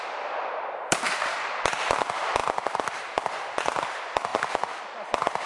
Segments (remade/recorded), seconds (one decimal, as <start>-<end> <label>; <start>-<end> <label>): 0.0-4.3 remade; 4.3-4.9 recorded; 4.9-5.5 remade